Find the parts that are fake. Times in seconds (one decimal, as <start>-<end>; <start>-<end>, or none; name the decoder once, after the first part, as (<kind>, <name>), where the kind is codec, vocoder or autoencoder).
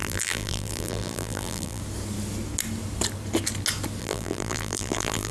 0.0-1.8 (vocoder, BigVGAN v2); 4.0-5.3